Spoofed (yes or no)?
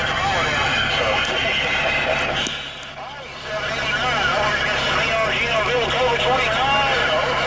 no